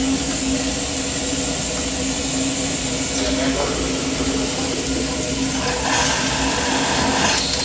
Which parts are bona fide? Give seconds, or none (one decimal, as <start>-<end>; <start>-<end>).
0.7-7.6

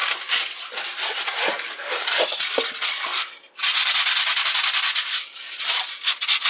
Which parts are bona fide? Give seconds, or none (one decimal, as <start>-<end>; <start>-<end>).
0.0-6.5

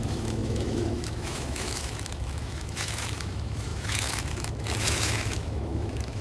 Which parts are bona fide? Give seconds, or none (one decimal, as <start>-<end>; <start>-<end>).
none

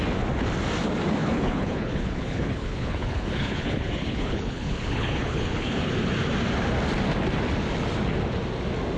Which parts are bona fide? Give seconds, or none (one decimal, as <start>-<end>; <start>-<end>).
0.0-1.2; 5.9-9.0

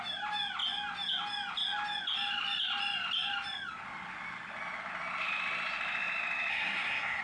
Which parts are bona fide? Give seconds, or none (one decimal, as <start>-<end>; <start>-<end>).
0.0-6.5